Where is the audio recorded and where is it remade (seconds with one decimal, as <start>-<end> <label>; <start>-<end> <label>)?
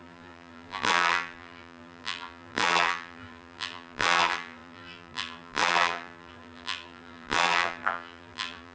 0.0-8.7 remade